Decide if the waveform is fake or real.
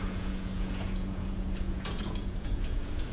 fake